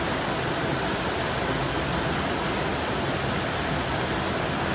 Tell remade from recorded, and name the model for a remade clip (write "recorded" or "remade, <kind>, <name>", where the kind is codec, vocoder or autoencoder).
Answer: recorded